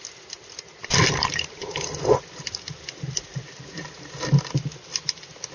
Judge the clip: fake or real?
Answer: real